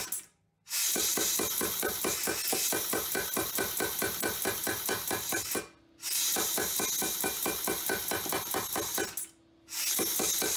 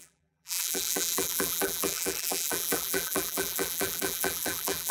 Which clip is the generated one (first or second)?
second